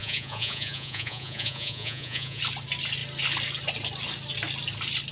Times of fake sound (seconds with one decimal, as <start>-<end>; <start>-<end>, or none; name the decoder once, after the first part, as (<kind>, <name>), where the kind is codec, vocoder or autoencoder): 0.0-2.4 (vocoder, Vocos)